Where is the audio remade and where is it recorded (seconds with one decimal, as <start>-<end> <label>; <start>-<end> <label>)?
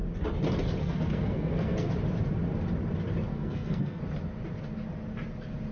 0.0-0.8 recorded; 0.8-1.9 remade; 1.9-3.3 recorded; 3.3-4.0 remade; 4.0-5.7 recorded